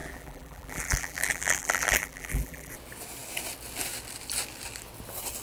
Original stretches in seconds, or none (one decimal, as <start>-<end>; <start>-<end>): 2.7-5.4